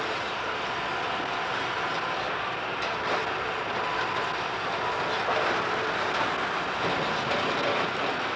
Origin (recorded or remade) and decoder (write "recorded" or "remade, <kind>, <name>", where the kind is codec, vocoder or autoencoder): recorded